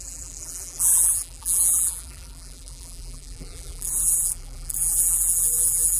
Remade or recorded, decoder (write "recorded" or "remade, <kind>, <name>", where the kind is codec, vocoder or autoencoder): remade, vocoder, BigVGAN v2